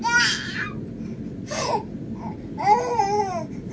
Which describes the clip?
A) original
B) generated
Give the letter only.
A